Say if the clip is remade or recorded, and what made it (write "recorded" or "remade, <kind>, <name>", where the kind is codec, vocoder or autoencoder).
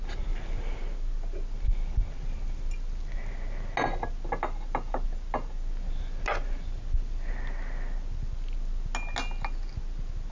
recorded